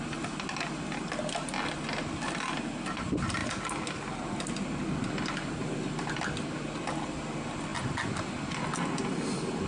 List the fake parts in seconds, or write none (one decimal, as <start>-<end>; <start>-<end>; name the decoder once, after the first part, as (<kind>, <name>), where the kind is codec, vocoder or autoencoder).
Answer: none